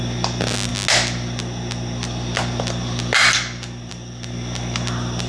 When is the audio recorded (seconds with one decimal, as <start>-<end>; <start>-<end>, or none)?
0.0-5.3